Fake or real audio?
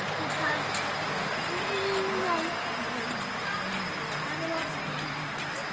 real